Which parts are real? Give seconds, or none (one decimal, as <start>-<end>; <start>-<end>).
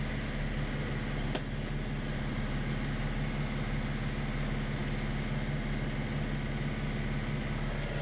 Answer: 0.0-2.1; 2.7-8.0